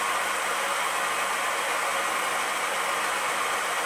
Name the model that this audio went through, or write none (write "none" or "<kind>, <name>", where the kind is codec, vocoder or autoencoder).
none